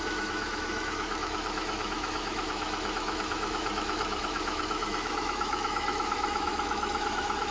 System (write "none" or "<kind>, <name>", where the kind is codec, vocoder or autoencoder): autoencoder, DAC-VAE